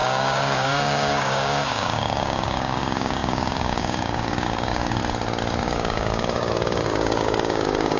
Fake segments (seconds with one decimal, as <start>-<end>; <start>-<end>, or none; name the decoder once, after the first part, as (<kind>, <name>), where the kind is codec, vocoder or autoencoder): 0.0-5.0 (codec, DAC); 5.6-8.0